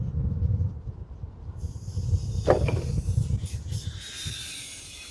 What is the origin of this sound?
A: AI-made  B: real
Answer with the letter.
A